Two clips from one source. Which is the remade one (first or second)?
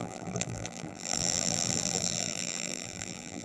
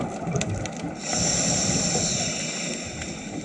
first